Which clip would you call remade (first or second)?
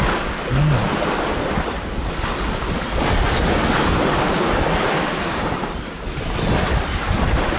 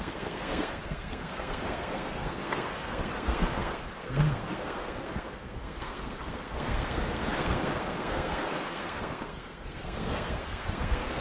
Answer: second